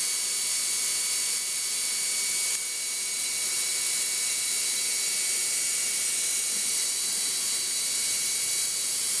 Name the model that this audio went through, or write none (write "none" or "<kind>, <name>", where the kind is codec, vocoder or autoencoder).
none